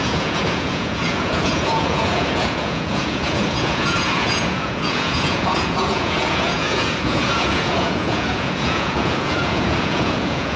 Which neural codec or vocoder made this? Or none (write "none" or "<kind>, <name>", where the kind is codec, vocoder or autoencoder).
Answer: vocoder, Vocos